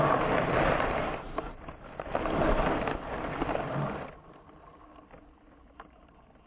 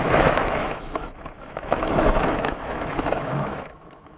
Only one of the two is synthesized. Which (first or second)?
second